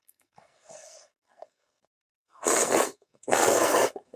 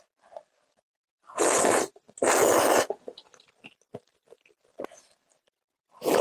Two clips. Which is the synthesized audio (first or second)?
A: first